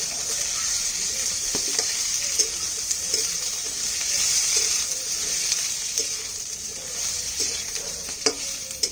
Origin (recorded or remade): remade